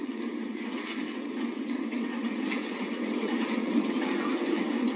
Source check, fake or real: fake